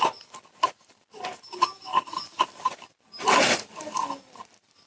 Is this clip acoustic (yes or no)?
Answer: no